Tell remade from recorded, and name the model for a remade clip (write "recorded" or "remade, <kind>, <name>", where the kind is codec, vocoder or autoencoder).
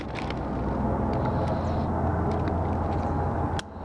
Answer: recorded